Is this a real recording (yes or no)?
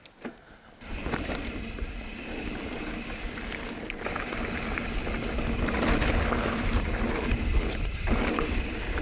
yes